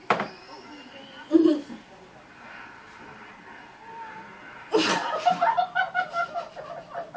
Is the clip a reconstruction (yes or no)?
no